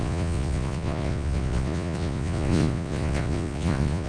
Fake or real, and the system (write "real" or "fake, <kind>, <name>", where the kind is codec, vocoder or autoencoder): fake, vocoder, Vocos